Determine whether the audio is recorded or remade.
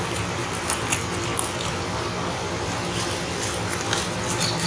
recorded